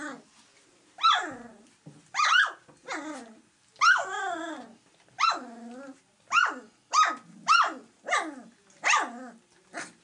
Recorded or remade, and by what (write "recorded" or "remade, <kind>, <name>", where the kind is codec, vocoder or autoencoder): recorded